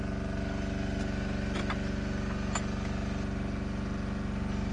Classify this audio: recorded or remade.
recorded